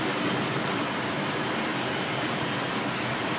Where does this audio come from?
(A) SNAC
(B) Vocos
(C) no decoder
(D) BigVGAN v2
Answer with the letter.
D